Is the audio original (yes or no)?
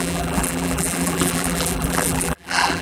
no